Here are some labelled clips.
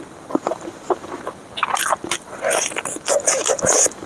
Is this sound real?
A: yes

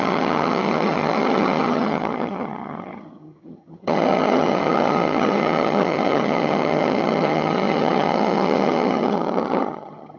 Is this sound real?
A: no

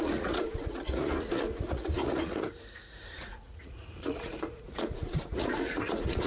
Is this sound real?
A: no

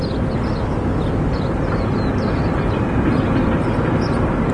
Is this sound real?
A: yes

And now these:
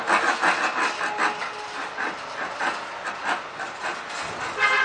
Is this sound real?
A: yes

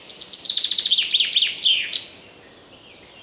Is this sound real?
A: yes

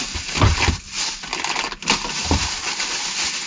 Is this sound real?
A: yes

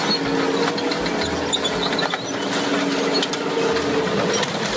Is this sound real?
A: yes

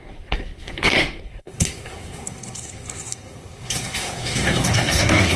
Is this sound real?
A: no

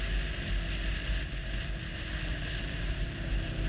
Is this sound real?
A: yes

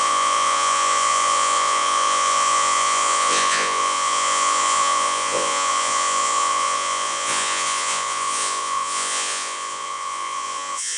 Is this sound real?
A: no